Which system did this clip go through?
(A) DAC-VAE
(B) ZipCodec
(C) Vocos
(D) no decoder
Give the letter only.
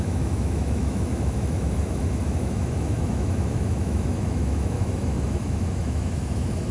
A